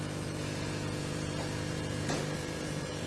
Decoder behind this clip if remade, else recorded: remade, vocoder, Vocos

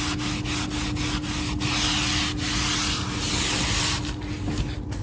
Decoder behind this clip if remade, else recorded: recorded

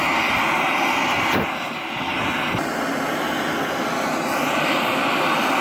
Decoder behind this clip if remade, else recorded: recorded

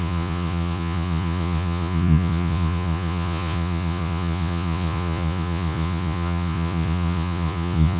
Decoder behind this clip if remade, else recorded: remade, vocoder, Vocos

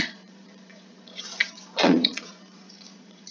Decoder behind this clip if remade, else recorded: remade, vocoder, Vocos